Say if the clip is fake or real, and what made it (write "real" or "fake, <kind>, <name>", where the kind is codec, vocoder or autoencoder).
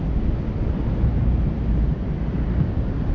real